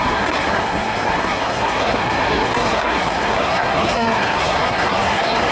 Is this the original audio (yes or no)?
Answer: no